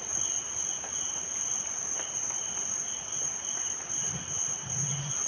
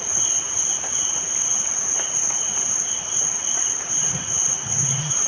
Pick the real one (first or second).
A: first